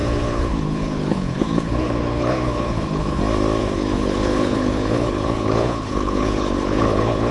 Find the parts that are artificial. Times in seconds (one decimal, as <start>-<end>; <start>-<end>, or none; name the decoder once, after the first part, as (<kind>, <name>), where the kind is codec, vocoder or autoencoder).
0.0-3.2 (codec, HILCodec); 3.6-7.3